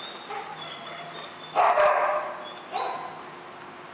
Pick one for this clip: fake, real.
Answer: real